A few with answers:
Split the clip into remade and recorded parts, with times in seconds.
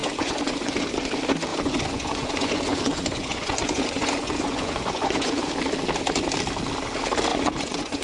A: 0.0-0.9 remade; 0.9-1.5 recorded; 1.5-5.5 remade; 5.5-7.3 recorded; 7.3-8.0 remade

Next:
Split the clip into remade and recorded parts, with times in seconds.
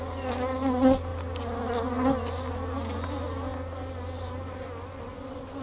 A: 0.0-5.6 recorded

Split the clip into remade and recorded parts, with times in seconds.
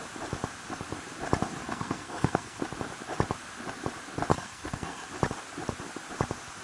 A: 0.0-1.6 recorded; 1.6-2.6 remade; 2.6-4.3 recorded; 4.3-5.1 remade; 5.1-6.6 recorded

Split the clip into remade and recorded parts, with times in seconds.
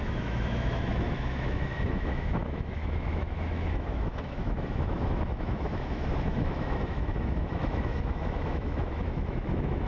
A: 0.0-9.9 remade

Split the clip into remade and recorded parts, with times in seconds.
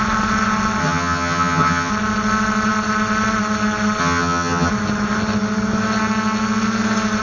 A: 0.0-0.8 recorded; 0.8-1.9 remade; 1.9-4.0 recorded; 4.0-4.7 remade; 4.7-7.2 recorded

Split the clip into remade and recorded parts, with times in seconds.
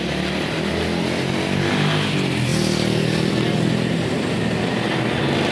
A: 0.0-5.5 recorded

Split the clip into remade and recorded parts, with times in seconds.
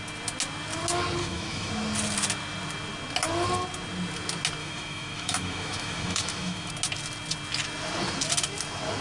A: 0.0-1.2 recorded; 1.2-1.7 remade; 1.7-4.6 recorded; 4.6-6.7 remade; 6.7-9.0 recorded